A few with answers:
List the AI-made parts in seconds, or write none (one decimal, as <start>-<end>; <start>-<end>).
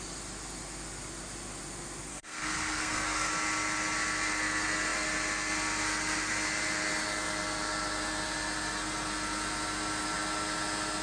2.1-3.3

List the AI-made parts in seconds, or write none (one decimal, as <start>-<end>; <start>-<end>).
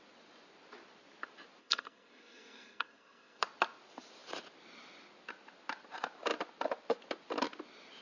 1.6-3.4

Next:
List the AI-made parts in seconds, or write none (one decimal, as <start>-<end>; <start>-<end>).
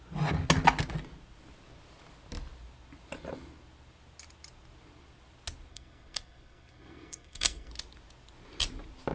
5.7-7.7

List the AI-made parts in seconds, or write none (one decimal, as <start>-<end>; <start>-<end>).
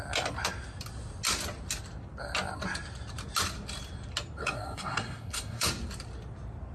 4.4-5.7